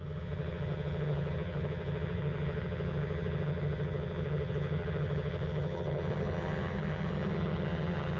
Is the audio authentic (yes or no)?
no